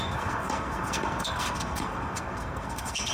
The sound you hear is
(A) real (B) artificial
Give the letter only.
B